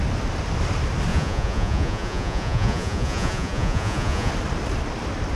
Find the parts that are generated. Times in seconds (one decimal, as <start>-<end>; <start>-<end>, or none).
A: 1.1-4.3